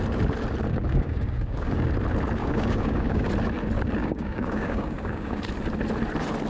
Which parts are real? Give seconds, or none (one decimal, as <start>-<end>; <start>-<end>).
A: 0.0-0.7; 1.9-2.4; 3.3-4.0; 5.4-6.5